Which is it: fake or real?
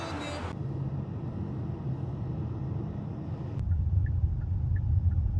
real